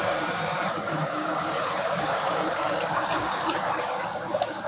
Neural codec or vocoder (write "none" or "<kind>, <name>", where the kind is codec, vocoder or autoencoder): codec, DAC